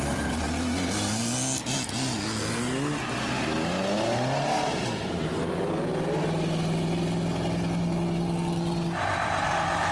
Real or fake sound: real